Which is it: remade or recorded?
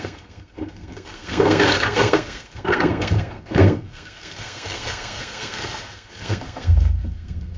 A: remade